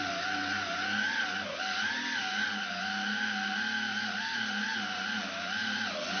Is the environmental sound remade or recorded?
recorded